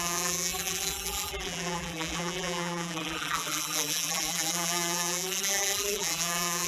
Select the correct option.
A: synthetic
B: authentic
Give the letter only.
A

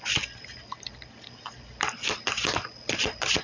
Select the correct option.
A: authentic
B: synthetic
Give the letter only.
B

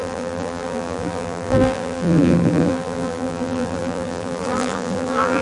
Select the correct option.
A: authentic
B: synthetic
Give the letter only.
B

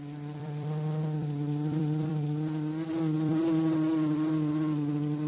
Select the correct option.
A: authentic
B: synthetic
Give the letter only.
B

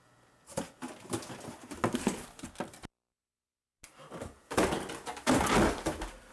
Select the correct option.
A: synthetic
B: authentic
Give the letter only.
B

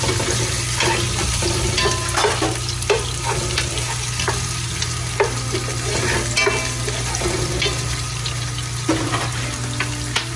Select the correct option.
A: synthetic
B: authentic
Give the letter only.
B